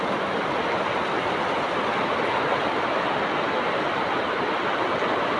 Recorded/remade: recorded